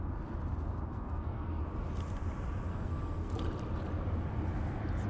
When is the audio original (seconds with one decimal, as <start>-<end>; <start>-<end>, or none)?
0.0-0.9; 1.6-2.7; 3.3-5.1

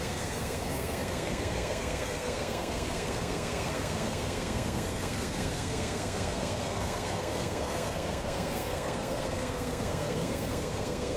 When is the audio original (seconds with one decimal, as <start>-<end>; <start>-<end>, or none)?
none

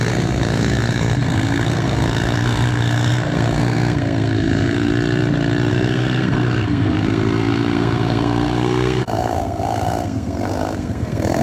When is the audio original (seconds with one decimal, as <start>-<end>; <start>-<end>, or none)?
4.9-5.7

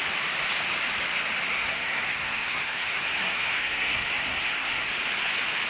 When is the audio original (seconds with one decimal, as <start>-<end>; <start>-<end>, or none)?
0.0-1.5; 4.9-5.7

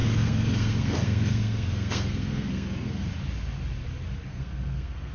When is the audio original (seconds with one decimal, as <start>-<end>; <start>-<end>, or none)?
3.1-4.3